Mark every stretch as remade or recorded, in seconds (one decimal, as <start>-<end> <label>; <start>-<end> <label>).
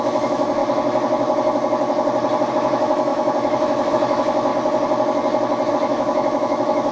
0.0-0.6 remade; 0.6-2.5 recorded; 2.5-4.5 remade; 4.5-5.7 recorded; 5.7-6.9 remade